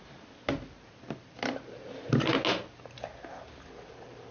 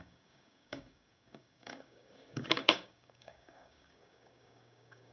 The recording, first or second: first